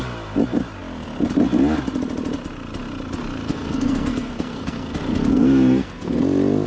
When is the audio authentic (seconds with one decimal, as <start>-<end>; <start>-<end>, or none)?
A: 0.0-3.5; 6.2-6.7

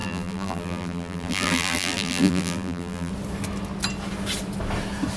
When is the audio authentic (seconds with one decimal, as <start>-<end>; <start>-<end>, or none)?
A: 3.1-5.2

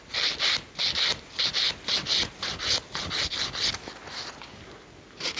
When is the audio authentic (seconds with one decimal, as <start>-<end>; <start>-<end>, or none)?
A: 0.0-5.4

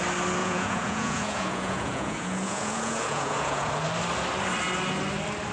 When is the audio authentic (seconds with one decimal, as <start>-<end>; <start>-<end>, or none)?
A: 0.0-0.4; 3.7-5.5

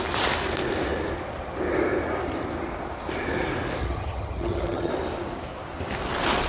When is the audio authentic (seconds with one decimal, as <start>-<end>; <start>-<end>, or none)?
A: 0.0-3.8; 4.9-6.5

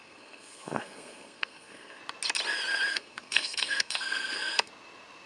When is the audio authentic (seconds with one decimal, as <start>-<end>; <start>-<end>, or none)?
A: 2.0-2.9; 4.7-5.3